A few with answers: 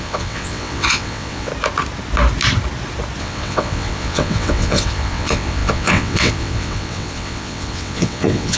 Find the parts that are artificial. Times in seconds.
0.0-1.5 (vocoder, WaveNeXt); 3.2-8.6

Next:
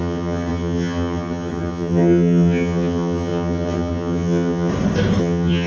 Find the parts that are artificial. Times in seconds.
0.0-4.7 (vocoder, HiFi-GAN); 5.2-5.7

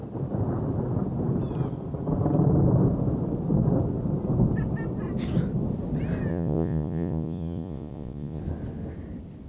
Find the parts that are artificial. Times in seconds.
6.3-8.4 (vocoder, Vocos)

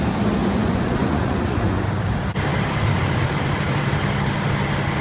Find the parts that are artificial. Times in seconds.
0.4-1.8 (vocoder, Vocos)